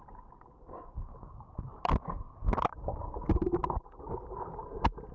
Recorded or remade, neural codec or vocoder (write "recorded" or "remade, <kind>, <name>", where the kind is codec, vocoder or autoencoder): recorded